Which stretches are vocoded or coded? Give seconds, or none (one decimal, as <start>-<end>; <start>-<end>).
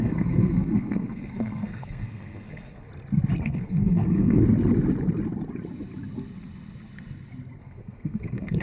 0.0-2.9; 3.4-4.4; 7.6-8.6